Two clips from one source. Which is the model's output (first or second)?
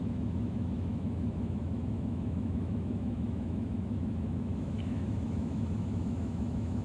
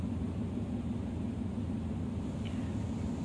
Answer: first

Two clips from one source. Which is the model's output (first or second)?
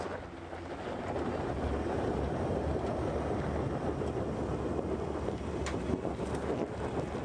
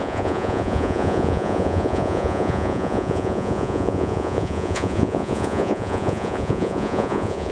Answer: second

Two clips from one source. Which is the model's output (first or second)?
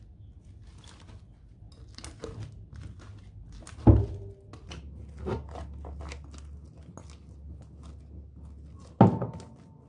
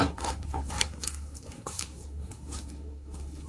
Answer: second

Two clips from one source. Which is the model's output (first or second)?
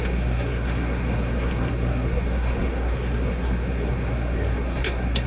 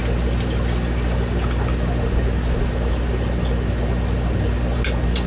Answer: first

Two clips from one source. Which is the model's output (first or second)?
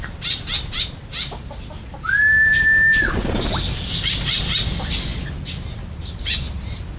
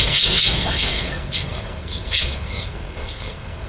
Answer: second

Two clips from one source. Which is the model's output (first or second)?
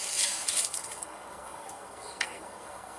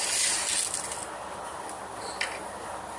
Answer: first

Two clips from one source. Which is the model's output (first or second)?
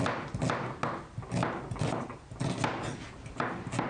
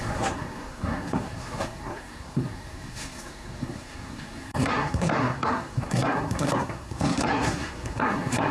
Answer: second